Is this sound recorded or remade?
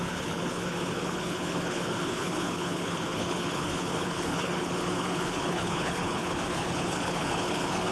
remade